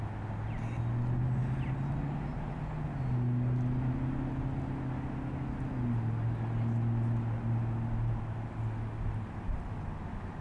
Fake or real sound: real